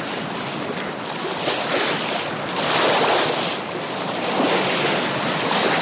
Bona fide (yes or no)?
yes